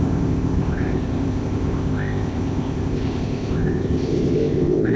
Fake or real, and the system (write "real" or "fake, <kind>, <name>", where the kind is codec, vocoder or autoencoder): fake, codec, ZipCodec